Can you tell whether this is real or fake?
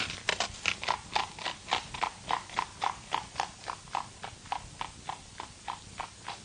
real